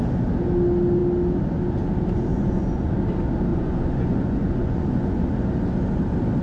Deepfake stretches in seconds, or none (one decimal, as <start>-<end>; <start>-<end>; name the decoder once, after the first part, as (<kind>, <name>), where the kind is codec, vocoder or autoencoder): 2.3-2.9 (vocoder, Vocos); 3.5-5.4